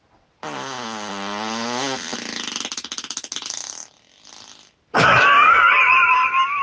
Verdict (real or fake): real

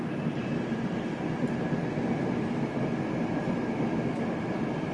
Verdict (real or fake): real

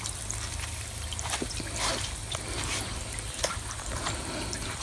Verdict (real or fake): real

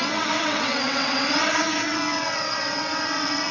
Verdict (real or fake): fake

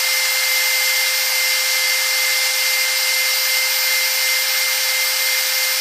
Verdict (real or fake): real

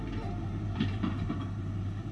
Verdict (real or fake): fake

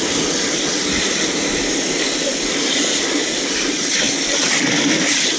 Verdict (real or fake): real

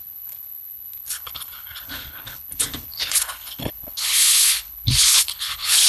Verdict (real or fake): fake